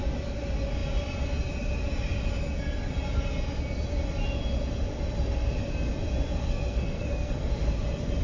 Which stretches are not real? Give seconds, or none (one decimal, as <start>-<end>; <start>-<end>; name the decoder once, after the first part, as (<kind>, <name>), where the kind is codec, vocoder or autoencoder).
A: 6.4-7.5 (codec, SNAC)